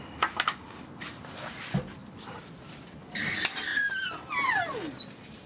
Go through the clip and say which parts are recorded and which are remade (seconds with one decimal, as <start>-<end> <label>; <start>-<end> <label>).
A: 0.0-5.5 recorded